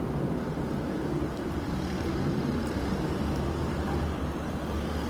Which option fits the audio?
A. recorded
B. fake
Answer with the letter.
B